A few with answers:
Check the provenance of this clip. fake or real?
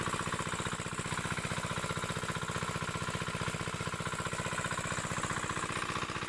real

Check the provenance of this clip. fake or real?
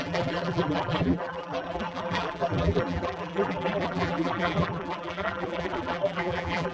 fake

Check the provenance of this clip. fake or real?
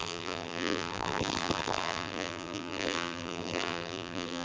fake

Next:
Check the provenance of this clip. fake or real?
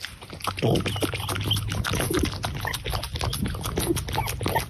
real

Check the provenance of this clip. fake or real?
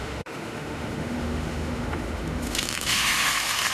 fake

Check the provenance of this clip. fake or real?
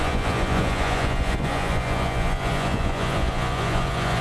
fake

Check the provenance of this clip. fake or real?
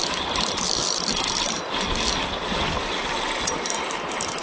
real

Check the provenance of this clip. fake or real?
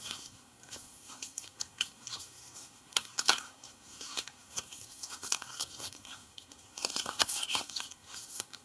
fake